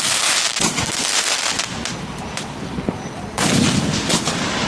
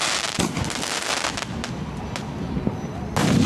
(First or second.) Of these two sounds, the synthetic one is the first